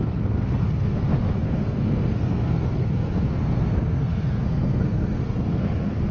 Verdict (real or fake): fake